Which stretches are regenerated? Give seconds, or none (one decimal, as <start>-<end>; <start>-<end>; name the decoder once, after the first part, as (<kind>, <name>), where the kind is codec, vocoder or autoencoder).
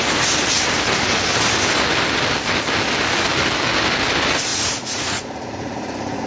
4.5-6.3 (vocoder, Vocos)